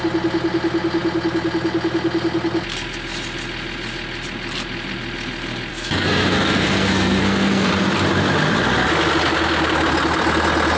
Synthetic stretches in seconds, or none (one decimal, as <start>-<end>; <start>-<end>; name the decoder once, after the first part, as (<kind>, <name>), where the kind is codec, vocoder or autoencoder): 5.7-7.7 (codec, SNAC)